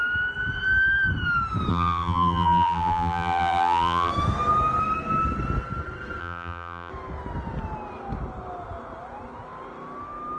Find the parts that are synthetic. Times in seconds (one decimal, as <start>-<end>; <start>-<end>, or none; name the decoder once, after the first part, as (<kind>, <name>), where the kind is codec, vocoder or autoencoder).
1.7-4.1 (vocoder, BigVGAN v2); 6.2-6.9